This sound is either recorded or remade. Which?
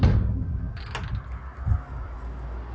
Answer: recorded